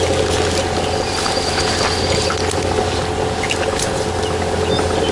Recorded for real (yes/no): yes